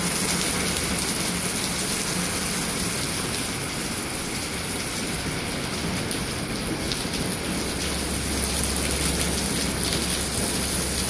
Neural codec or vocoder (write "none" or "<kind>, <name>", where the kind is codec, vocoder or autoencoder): none